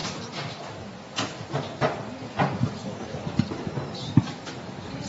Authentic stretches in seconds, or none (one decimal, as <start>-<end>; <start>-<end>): 2.5-5.1